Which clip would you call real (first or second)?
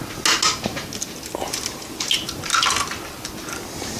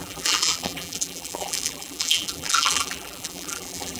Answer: first